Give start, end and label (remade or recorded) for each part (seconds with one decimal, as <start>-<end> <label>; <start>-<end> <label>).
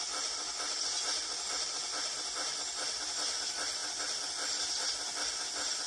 0.0-5.9 recorded